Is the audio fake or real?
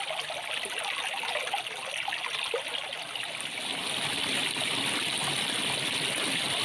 real